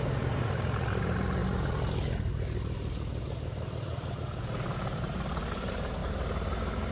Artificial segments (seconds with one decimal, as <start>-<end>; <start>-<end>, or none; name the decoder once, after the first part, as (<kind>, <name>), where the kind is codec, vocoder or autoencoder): 0.0-6.0 (vocoder, BigVGAN v2)